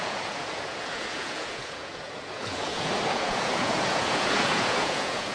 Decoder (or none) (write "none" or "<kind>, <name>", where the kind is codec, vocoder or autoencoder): vocoder, Vocos